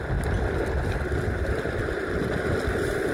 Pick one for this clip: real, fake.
real